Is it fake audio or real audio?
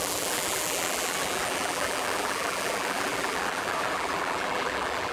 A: fake